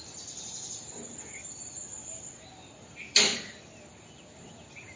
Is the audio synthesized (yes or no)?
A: no